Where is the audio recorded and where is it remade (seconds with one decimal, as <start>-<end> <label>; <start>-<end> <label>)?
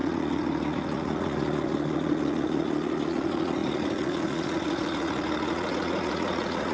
0.0-6.7 remade